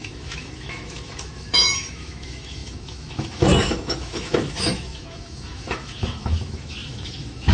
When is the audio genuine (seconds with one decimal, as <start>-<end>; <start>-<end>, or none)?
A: none